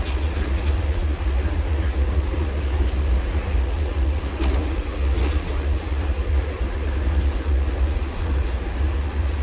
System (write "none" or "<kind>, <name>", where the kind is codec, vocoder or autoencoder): vocoder, Vocos